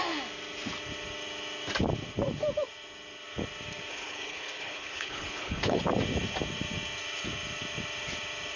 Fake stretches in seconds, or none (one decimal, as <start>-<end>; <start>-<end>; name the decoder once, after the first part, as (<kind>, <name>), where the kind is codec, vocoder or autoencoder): 3.9-5.8 (codec, HILCodec)